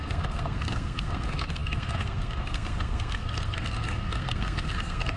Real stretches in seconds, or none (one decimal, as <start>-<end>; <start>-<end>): none